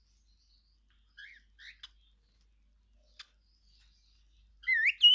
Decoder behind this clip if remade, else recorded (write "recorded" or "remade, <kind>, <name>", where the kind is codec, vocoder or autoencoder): recorded